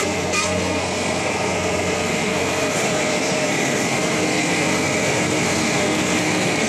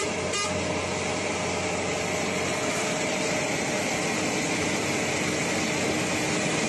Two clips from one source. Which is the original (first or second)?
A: second